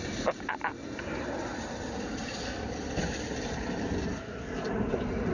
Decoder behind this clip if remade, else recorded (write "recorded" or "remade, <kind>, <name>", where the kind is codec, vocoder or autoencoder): recorded